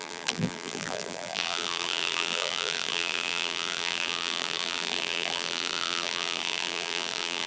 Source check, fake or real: fake